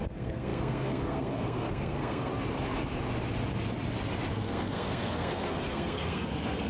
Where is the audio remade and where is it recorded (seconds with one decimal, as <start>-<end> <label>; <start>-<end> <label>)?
0.0-2.3 remade; 2.3-4.3 recorded; 4.3-6.7 remade